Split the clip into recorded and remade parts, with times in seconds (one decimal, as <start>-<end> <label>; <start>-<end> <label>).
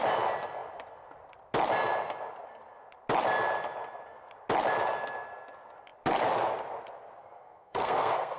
0.0-7.2 recorded; 7.2-8.4 remade